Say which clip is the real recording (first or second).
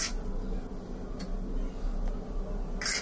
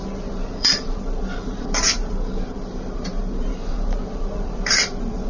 first